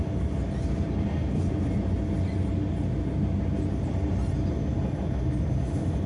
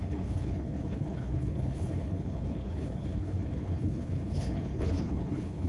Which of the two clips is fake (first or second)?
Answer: second